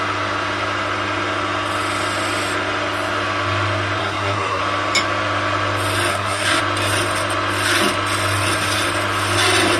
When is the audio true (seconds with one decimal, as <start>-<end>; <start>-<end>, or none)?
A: 0.0-4.0; 4.6-6.1; 6.6-9.8